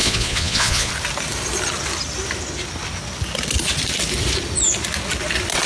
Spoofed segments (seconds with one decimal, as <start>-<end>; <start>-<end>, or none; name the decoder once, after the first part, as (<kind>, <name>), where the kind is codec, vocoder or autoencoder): 0.0-0.9 (vocoder, Vocos)